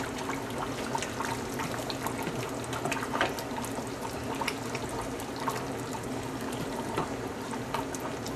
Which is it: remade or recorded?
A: recorded